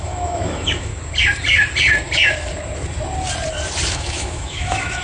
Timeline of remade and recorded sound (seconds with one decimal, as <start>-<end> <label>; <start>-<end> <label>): 0.0-0.9 remade; 0.9-3.9 recorded; 3.9-5.0 remade